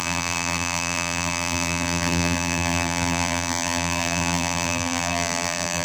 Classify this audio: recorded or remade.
remade